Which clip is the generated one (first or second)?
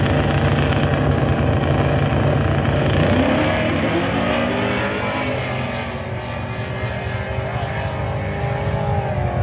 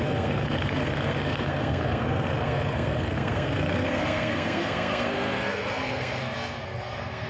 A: second